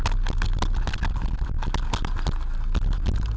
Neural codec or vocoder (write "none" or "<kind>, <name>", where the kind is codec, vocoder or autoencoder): none